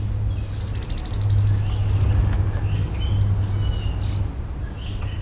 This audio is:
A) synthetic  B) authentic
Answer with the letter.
B